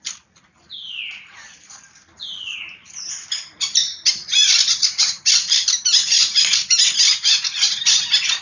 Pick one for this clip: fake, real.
real